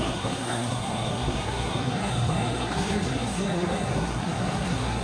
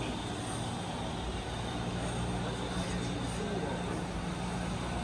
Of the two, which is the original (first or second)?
second